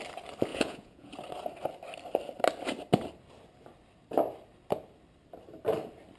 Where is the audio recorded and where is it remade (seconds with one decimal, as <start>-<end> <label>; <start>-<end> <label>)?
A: 0.0-0.5 recorded; 0.5-1.1 remade; 1.1-6.2 recorded